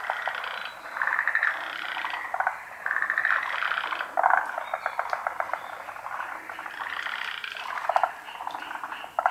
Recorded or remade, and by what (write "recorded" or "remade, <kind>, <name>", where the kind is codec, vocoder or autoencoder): recorded